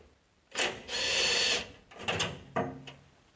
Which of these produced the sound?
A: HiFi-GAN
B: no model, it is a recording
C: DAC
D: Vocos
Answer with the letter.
B